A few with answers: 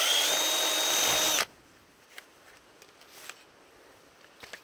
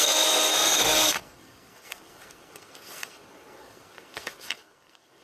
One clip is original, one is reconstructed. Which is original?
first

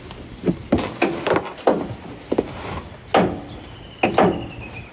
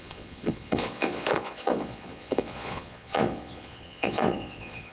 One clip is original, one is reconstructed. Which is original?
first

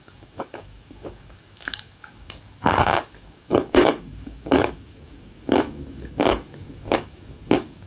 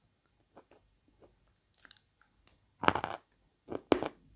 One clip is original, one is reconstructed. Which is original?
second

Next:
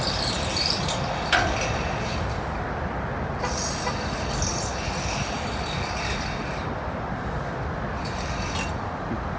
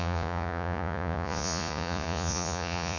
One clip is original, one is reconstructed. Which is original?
first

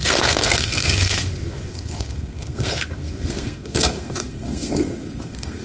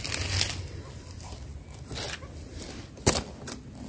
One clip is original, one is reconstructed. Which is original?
second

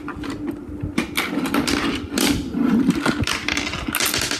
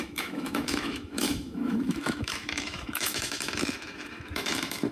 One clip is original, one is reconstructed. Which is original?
first